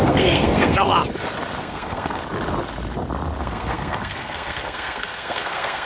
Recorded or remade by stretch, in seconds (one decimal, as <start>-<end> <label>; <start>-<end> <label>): 0.0-0.9 remade; 0.9-1.6 recorded; 1.6-2.2 remade; 2.2-3.4 recorded; 3.4-5.9 remade

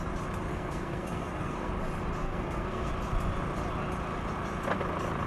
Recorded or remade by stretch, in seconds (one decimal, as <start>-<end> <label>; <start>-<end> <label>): 0.0-0.5 recorded; 0.5-1.7 remade; 1.7-2.2 recorded; 2.2-2.9 remade; 2.9-5.3 recorded

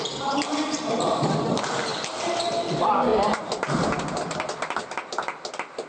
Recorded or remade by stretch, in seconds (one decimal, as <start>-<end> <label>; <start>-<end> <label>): 0.0-1.9 recorded; 1.9-2.5 remade; 2.5-3.1 recorded; 3.1-4.8 remade; 4.8-5.9 recorded

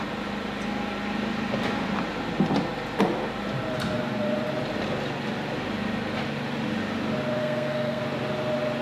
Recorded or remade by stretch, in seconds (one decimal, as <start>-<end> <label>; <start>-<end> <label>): 0.0-7.4 recorded; 7.4-8.0 remade; 8.0-8.8 recorded

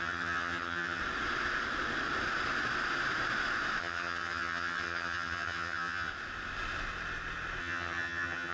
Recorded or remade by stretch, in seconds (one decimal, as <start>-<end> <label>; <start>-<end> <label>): 0.0-1.0 remade; 1.0-3.8 recorded; 3.8-6.1 remade; 6.1-7.6 recorded; 7.6-8.5 remade